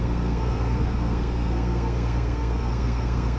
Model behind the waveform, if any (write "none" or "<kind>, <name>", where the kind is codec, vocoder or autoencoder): codec, SNAC